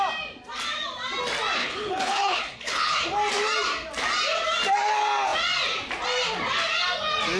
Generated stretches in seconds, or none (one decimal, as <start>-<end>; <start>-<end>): 1.6-3.0